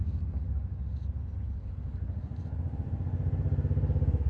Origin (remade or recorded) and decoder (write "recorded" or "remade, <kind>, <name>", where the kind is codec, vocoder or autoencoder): recorded